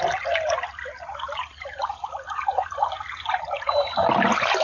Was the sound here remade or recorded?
recorded